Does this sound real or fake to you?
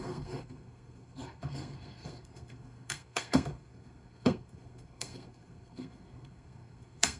fake